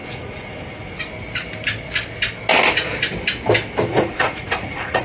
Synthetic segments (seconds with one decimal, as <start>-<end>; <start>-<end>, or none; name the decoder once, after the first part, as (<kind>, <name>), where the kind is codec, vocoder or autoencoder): 0.0-1.0 (vocoder, Vocos); 3.9-5.0